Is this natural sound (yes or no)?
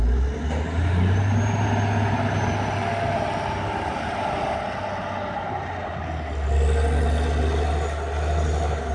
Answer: yes